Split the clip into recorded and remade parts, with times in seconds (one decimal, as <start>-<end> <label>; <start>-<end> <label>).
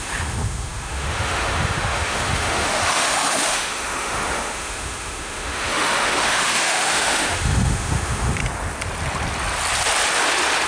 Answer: 0.0-8.4 remade; 8.4-10.7 recorded